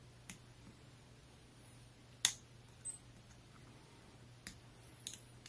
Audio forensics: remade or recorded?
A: recorded